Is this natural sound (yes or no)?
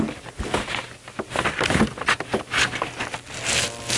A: yes